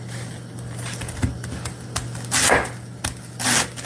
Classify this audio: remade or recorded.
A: recorded